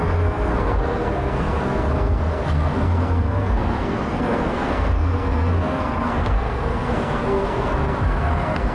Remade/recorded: remade